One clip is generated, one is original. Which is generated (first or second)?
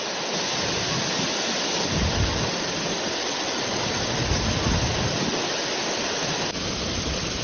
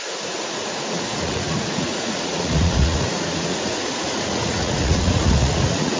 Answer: second